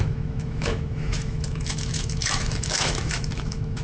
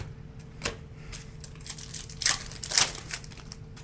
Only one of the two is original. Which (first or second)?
second